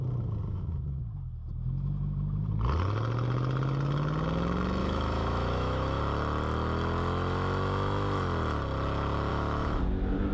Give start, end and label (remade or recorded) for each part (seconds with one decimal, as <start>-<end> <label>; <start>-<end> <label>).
0.0-0.5 recorded; 0.5-1.0 remade; 1.0-4.8 recorded; 4.8-6.0 remade; 6.0-9.3 recorded; 9.3-9.8 remade; 9.8-10.3 recorded